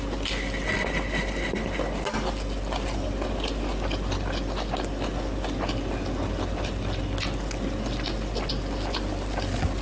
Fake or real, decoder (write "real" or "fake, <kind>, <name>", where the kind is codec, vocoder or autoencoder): real